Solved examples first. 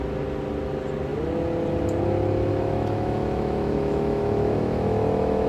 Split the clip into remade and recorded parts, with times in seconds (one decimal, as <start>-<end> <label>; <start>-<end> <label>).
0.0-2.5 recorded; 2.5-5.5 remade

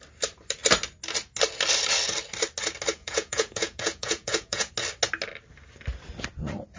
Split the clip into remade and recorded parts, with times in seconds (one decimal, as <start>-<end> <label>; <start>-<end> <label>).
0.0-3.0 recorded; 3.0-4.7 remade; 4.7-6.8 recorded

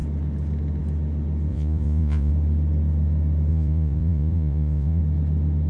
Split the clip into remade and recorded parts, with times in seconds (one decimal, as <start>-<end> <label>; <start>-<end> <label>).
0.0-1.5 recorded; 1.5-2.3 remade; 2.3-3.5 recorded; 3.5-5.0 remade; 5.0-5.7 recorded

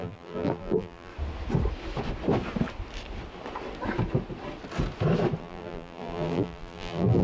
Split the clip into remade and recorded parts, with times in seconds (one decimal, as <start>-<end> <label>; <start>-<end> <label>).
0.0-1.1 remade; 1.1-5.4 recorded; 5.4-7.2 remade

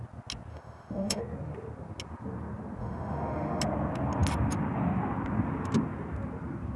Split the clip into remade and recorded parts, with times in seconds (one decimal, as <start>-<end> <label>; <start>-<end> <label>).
0.0-0.5 recorded; 0.5-1.2 remade; 1.2-2.8 recorded; 2.8-3.6 remade; 3.6-6.8 recorded